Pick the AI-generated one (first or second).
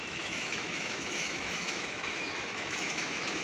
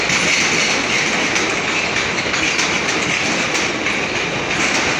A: first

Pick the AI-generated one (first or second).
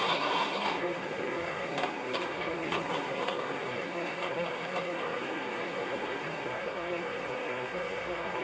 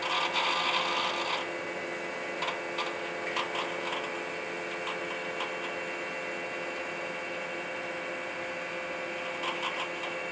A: first